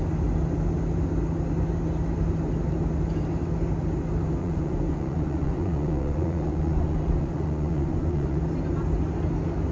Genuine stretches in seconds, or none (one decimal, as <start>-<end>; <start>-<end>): 0.0-4.4; 8.4-9.7